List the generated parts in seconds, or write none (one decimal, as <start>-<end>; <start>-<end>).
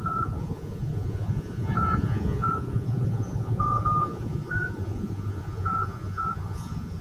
0.0-7.0